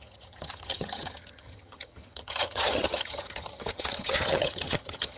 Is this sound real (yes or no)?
no